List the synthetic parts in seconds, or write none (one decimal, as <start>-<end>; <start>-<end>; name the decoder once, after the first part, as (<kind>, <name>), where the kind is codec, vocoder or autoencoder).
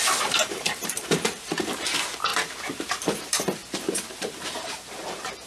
0.0-3.6 (vocoder, BigVGAN v2); 4.1-5.5